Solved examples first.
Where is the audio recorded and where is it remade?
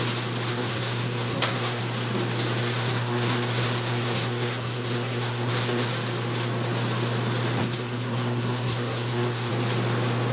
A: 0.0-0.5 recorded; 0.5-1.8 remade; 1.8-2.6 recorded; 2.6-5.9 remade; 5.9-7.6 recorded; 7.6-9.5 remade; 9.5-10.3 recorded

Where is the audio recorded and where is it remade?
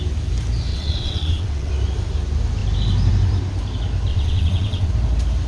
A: 0.0-0.7 recorded; 0.7-1.7 remade; 1.7-4.1 recorded; 4.1-4.9 remade; 4.9-5.5 recorded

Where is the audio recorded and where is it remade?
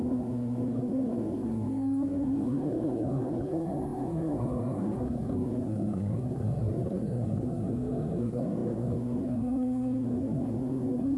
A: 0.0-11.2 remade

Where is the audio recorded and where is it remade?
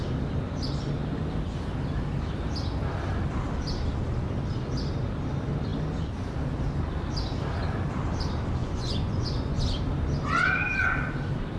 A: 0.0-8.6 recorded; 8.6-9.6 remade; 9.6-11.6 recorded